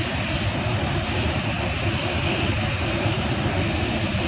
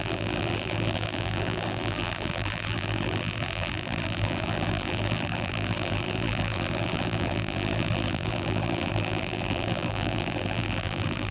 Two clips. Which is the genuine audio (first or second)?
first